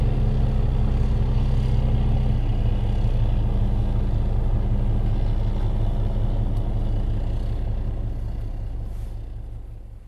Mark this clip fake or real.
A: real